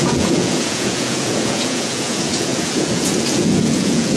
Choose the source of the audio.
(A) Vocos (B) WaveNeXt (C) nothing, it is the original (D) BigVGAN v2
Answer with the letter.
A